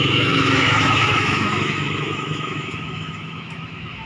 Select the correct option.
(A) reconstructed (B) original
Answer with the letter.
A